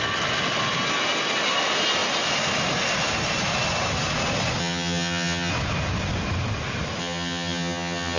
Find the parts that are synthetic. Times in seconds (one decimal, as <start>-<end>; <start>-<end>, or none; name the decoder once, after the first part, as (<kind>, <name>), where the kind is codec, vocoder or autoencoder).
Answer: 4.6-5.5 (vocoder, HiFi-GAN); 7.0-8.2